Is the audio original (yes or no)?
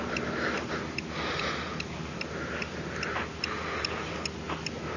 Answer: yes